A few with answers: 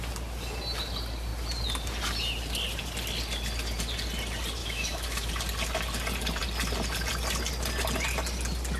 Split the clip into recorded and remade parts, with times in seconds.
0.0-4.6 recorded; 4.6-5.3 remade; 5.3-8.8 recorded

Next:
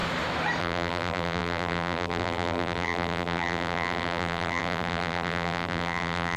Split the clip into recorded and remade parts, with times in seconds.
0.0-0.6 recorded; 0.6-6.4 remade